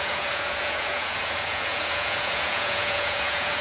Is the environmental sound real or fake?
fake